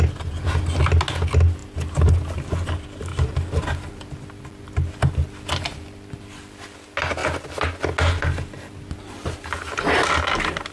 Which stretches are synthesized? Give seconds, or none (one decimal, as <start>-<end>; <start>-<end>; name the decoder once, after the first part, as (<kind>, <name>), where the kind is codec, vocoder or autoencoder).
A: none